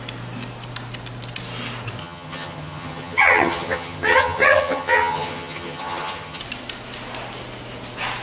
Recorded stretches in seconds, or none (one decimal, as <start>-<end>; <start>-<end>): 0.0-2.0; 6.4-8.2